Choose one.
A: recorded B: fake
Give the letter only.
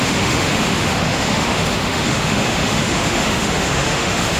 B